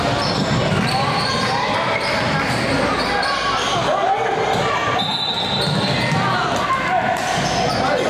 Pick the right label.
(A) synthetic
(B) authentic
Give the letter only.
B